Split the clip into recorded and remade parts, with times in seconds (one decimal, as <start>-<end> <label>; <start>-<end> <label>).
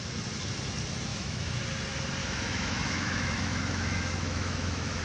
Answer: 0.0-1.1 recorded; 1.1-1.6 remade; 1.6-2.2 recorded; 2.2-5.0 remade